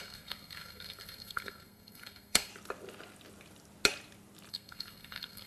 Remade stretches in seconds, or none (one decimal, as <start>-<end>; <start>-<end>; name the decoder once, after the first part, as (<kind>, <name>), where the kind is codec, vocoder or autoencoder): 0.0-2.5 (codec, SNAC); 4.5-5.5